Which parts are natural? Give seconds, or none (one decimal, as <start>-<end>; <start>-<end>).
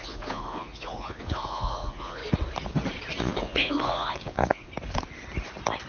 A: 2.2-3.2; 4.7-5.9